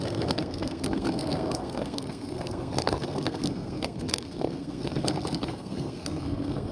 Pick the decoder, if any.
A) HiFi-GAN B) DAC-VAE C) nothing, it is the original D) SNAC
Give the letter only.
D